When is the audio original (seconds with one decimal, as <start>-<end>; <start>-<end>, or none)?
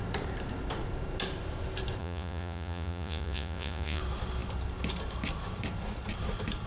0.0-2.0; 4.0-6.7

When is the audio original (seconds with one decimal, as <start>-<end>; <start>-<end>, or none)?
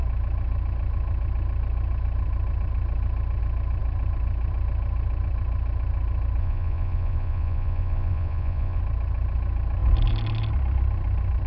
0.0-6.4; 8.8-11.5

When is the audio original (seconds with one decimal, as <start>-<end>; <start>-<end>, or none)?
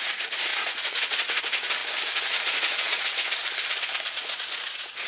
1.8-2.4; 3.4-4.1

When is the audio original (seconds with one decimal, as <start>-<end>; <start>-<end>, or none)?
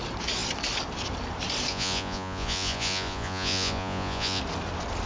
0.0-1.7; 4.4-5.1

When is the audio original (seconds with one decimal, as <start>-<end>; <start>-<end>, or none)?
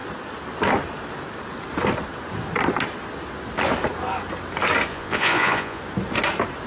0.0-4.9; 5.8-6.7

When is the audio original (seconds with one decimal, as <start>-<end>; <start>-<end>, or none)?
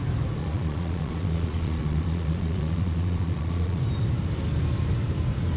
0.0-0.4; 3.8-5.6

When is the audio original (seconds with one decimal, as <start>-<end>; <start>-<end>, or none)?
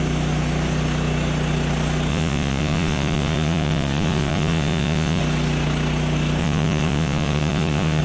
0.0-2.1; 5.2-6.4